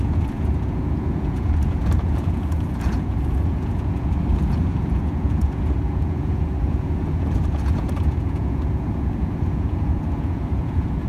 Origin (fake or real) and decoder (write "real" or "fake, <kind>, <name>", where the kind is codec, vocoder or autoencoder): fake, vocoder, Vocos